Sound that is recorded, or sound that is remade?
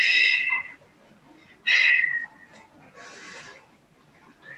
recorded